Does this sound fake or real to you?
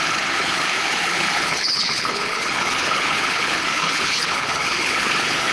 fake